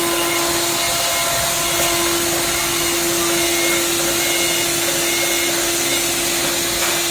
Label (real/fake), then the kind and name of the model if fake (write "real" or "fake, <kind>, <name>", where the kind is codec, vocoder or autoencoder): real